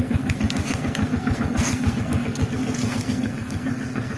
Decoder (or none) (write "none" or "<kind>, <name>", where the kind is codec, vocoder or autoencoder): codec, SNAC